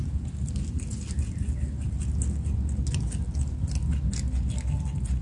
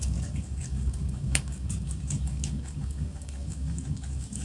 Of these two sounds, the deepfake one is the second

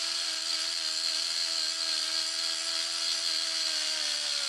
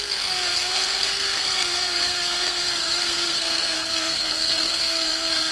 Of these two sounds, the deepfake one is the second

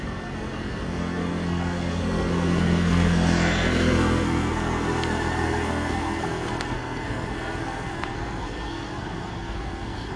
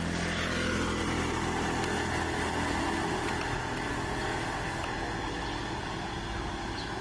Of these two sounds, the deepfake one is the first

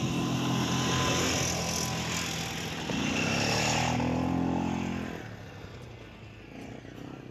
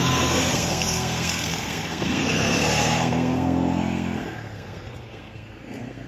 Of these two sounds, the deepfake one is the second